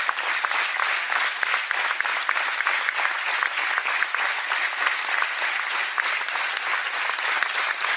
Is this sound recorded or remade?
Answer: recorded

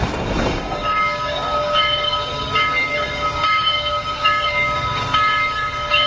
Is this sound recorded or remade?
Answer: remade